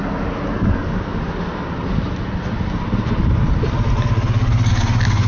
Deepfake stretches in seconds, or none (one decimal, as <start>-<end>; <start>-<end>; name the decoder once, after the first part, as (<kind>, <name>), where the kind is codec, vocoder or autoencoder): none